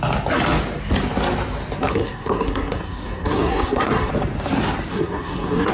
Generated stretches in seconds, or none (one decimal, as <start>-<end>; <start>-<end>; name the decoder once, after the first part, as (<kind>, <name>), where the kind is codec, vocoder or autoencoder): 1.9-4.1 (codec, SNAC); 4.9-5.7